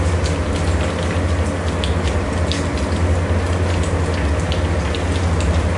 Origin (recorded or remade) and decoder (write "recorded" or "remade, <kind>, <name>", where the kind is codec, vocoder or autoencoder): recorded